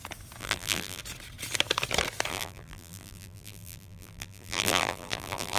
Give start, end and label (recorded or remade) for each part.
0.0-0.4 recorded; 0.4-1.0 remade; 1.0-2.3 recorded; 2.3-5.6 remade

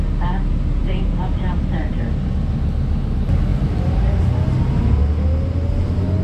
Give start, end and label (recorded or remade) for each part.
0.0-0.8 recorded; 0.8-2.0 remade; 2.0-6.2 recorded

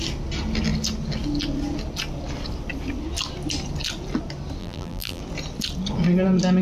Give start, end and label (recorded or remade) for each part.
0.0-4.6 recorded; 4.6-5.2 remade; 5.2-6.6 recorded

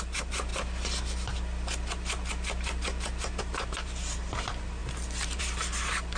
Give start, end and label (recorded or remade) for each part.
0.0-0.5 remade; 0.5-3.4 recorded; 3.4-6.2 remade

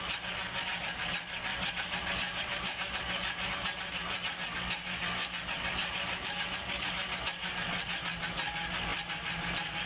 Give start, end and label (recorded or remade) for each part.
0.0-1.5 recorded; 1.5-3.5 remade; 3.5-5.8 recorded; 5.8-6.3 remade; 6.3-9.9 recorded